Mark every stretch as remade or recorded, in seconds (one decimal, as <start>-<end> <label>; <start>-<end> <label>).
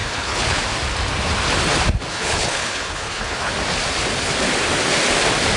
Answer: 0.0-0.6 remade; 0.6-2.1 recorded; 2.1-3.5 remade; 3.5-5.6 recorded